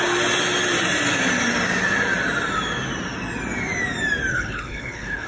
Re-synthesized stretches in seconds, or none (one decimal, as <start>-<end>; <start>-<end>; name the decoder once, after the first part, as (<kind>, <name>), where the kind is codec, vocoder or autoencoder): 4.3-5.3 (codec, HILCodec)